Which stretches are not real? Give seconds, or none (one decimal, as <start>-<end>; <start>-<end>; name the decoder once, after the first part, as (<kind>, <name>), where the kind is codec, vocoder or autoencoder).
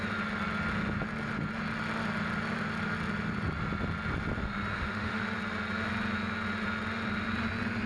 4.7-5.2 (autoencoder, DAC-VAE)